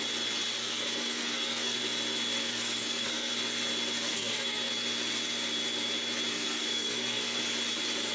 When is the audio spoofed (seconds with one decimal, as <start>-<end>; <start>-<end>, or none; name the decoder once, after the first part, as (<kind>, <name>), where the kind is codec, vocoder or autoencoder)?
0.6-1.8 (codec, SNAC); 2.4-3.3; 4.1-4.7; 6.3-7.4